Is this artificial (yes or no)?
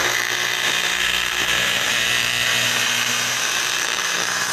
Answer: yes